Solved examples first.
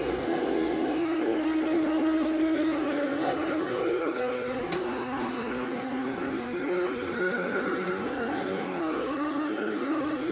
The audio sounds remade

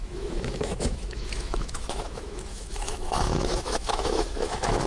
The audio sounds remade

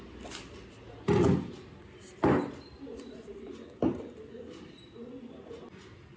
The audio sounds recorded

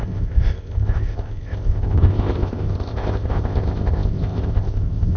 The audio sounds remade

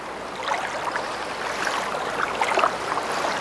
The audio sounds recorded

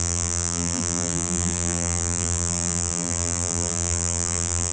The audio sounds remade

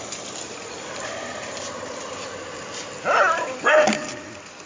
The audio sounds recorded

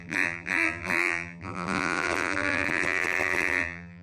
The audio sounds remade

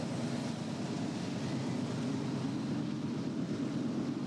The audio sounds recorded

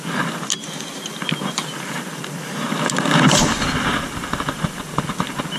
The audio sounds recorded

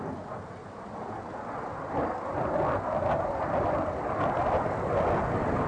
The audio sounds recorded